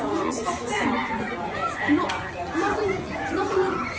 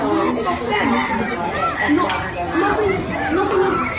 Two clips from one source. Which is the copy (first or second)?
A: first